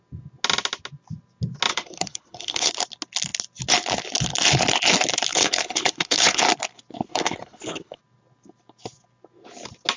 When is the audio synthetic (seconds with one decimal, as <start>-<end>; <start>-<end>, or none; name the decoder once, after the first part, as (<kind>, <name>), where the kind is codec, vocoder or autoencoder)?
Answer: 1.7-2.7 (codec, HILCodec); 5.3-6.4; 7.1-8.0